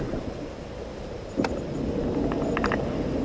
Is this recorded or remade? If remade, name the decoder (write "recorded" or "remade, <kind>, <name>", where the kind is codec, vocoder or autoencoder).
recorded